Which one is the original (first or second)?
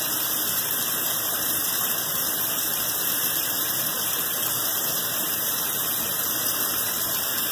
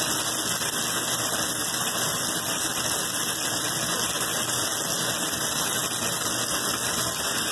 second